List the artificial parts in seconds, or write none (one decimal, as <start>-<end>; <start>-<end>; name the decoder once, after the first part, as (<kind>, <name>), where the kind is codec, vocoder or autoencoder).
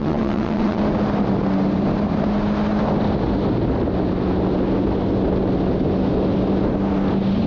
0.0-0.8 (vocoder, WaveNeXt)